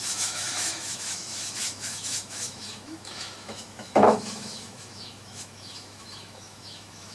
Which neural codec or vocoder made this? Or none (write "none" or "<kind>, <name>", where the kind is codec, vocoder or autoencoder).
autoencoder, DAC-VAE